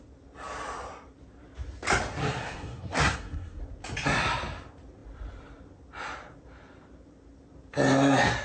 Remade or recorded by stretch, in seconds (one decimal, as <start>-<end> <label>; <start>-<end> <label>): 0.0-2.2 recorded; 2.2-3.6 remade; 3.6-8.4 recorded